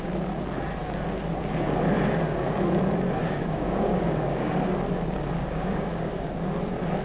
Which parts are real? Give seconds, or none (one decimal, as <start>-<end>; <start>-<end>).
0.0-3.2; 4.5-5.4; 6.3-7.0